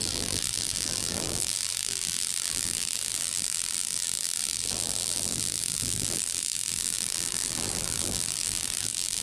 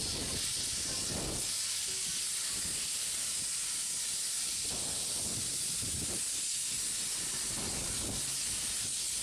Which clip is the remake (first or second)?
first